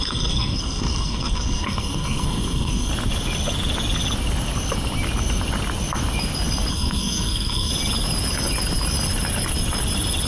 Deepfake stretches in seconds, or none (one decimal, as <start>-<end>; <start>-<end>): 0.0-2.9; 6.7-7.7